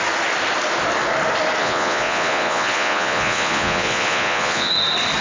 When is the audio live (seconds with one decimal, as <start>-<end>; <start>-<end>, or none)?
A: 0.0-1.6; 4.7-5.2

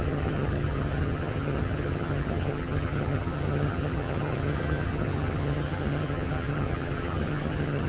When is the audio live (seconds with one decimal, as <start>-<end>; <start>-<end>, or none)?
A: none

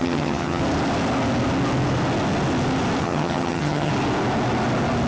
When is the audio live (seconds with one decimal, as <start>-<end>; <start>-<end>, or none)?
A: 0.6-3.0; 3.9-5.1

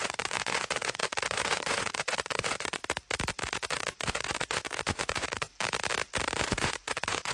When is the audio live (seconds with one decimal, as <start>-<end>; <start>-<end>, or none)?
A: 2.8-3.4; 5.5-6.4

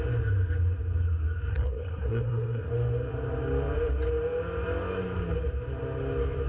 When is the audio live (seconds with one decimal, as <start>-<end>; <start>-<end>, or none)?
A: 0.0-1.5; 2.7-6.5